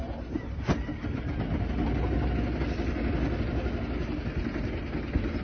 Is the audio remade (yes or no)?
no